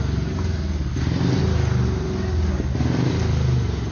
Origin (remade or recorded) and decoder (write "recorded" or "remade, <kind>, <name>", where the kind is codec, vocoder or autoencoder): recorded